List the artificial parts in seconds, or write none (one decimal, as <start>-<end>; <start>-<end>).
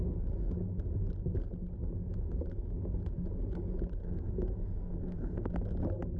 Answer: 4.0-5.5